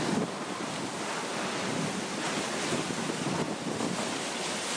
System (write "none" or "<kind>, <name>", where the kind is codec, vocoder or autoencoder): none